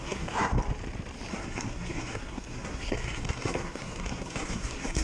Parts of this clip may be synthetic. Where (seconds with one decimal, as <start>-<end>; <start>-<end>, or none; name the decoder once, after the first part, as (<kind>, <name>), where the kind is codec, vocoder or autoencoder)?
0.0-0.5 (codec, SNAC); 1.3-5.0